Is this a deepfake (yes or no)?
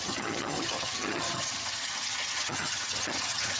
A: yes